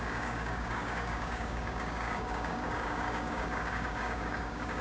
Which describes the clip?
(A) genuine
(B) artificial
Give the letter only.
B